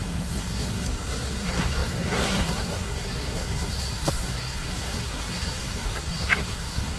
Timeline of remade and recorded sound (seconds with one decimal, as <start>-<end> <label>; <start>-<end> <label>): 0.0-7.0 remade